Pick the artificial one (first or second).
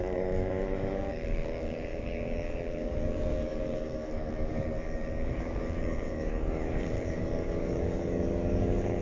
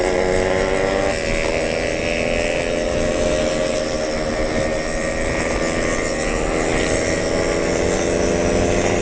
first